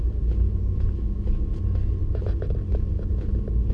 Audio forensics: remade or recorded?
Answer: recorded